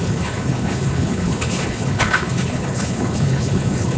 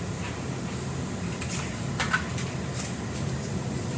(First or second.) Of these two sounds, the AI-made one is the first